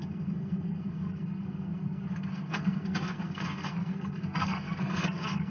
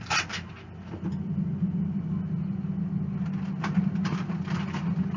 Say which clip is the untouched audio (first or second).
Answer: second